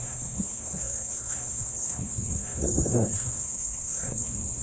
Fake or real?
fake